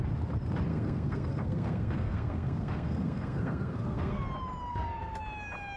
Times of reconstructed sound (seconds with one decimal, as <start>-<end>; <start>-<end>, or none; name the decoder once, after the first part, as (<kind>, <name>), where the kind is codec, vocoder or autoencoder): 0.7-4.2 (codec, SNAC); 4.7-5.2